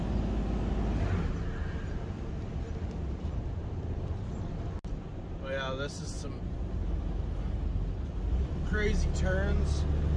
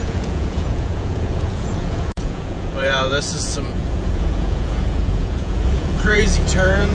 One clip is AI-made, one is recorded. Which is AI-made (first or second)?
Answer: second